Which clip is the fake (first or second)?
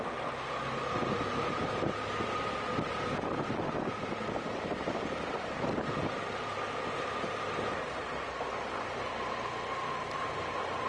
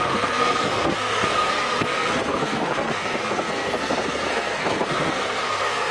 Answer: second